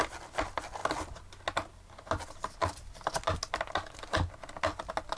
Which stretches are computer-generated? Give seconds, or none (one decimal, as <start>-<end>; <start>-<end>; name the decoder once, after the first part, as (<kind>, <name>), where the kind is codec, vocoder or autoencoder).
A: none

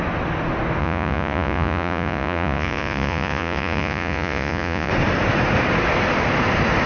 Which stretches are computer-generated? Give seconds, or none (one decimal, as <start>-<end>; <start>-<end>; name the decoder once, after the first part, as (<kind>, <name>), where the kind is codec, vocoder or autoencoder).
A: 0.8-4.9 (vocoder, Vocos)

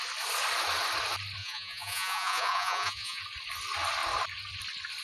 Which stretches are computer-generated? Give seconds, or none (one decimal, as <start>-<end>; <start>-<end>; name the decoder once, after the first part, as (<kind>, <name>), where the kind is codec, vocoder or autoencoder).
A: 1.4-3.2 (vocoder, Vocos)

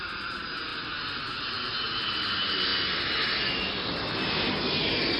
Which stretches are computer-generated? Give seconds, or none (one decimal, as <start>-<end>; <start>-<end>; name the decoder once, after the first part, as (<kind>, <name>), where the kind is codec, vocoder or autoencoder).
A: none

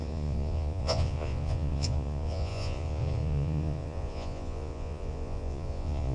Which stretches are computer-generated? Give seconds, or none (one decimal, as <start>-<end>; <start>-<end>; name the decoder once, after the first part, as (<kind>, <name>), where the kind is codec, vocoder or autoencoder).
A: 0.0-6.1 (vocoder, Vocos)